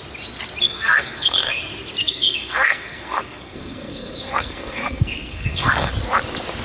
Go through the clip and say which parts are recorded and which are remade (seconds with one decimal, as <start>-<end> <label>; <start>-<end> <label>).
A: 0.0-0.6 recorded; 0.6-1.6 remade; 1.6-2.0 recorded; 2.0-5.9 remade; 5.9-6.6 recorded